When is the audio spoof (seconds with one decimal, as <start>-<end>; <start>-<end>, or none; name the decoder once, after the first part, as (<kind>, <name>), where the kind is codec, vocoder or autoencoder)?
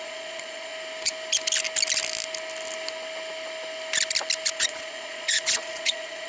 0.0-0.7 (vocoder, Vocos); 4.5-6.3